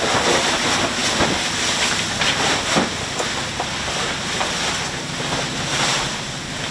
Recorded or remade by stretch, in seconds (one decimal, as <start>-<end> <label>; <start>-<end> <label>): 0.0-6.7 recorded